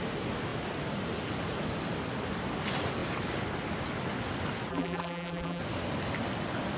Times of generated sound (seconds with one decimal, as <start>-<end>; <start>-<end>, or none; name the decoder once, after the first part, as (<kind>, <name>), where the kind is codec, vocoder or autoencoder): 4.7-5.6 (vocoder, BigVGAN v2)